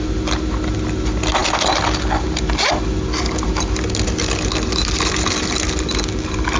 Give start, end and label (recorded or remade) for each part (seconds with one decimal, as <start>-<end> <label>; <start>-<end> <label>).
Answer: 0.0-6.6 recorded